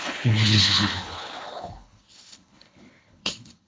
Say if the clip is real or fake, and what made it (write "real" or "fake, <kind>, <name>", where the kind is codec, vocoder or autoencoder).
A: fake, codec, HILCodec